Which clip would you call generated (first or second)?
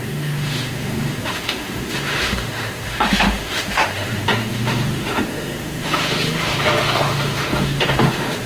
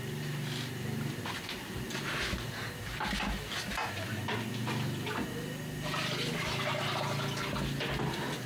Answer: first